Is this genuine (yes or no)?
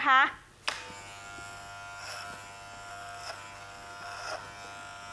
yes